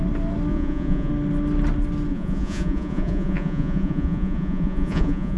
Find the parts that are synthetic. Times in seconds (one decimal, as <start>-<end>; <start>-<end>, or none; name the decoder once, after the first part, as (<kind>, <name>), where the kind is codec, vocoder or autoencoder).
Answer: 0.5-1.1 (vocoder, Vocos); 2.1-5.4

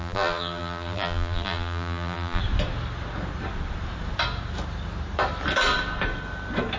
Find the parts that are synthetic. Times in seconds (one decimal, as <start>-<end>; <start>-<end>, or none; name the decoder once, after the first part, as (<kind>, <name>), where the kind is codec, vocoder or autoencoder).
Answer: 0.0-2.4 (vocoder, BigVGAN v2)

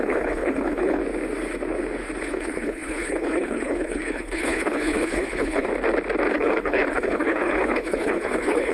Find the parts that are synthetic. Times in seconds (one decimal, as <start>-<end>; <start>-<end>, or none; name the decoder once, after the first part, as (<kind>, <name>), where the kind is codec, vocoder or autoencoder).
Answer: 0.0-1.0 (codec, HILCodec); 2.2-5.7; 6.3-8.7

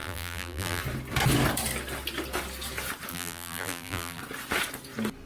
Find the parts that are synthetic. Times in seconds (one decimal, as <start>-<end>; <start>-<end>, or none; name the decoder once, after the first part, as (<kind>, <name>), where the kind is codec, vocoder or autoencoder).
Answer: 0.0-0.8 (vocoder, BigVGAN v2); 3.1-4.2

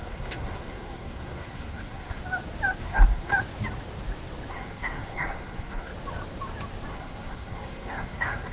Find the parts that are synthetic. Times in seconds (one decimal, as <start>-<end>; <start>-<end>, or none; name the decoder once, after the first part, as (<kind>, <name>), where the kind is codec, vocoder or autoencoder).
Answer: 0.0-2.2 (codec, SNAC); 2.8-3.3; 4.5-5.9; 6.9-8.5